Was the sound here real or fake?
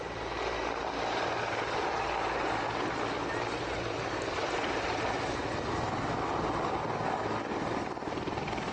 real